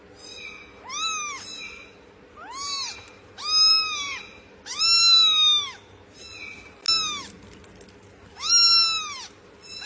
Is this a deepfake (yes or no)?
no